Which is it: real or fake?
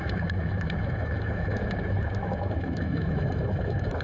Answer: fake